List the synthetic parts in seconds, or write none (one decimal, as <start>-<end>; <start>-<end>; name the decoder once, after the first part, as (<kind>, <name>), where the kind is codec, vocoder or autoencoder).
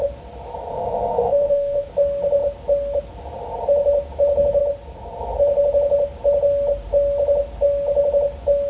0.7-1.9 (autoencoder, DAC-VAE)